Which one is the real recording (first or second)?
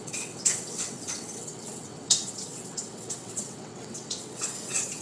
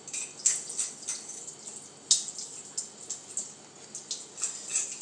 second